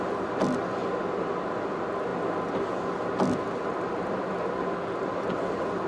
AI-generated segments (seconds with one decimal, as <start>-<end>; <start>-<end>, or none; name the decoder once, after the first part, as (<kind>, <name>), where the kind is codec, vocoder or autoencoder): none